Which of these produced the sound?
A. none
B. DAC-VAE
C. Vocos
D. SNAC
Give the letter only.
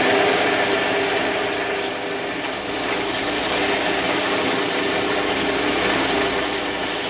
A